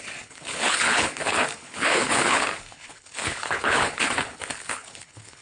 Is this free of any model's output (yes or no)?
no